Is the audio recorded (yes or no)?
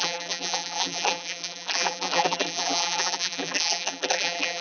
no